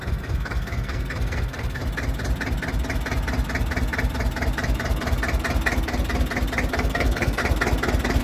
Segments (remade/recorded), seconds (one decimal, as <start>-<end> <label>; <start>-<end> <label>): 0.0-1.8 remade; 1.8-6.7 recorded; 6.7-7.4 remade; 7.4-8.2 recorded